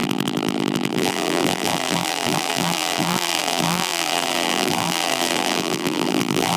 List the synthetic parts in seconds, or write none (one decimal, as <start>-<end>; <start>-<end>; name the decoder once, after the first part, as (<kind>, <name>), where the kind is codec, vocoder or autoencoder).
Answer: 0.0-6.6 (vocoder, BigVGAN v2)

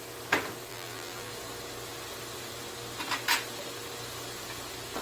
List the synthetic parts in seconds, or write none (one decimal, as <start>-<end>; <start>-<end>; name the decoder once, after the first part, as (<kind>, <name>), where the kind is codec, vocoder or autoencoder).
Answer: 0.7-1.3 (vocoder, BigVGAN v2)

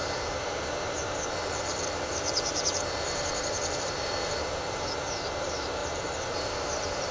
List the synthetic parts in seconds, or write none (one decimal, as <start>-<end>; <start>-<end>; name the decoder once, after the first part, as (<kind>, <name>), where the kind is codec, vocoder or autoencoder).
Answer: 0.0-7.1 (vocoder, BigVGAN v2)

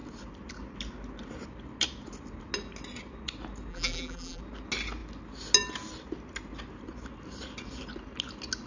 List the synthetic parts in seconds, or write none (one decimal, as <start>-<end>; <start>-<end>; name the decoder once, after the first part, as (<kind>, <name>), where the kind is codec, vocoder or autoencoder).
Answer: 3.7-4.4 (vocoder, BigVGAN v2)

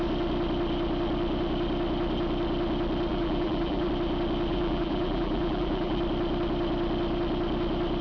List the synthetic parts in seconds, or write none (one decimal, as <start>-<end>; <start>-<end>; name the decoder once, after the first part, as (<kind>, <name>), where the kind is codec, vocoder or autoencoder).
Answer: 3.1-3.9 (vocoder, BigVGAN v2); 4.5-6.0

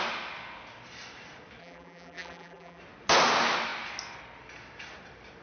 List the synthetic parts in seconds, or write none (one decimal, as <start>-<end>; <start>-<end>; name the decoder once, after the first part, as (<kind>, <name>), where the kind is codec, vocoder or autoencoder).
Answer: 1.6-2.8 (vocoder, BigVGAN v2)

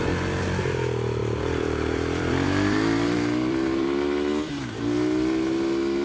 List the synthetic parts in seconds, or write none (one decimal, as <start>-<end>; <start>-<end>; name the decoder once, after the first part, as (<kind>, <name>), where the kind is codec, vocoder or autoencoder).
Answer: 1.2-4.5 (vocoder, BigVGAN v2)